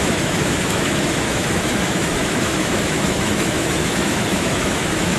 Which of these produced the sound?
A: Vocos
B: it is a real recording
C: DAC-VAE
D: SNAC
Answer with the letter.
C